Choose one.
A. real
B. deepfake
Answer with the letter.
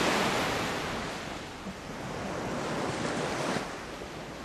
A